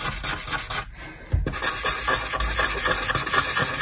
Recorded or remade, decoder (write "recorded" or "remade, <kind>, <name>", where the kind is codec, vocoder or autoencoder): recorded